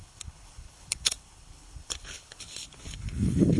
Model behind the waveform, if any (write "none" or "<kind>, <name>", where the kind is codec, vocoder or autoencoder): codec, HILCodec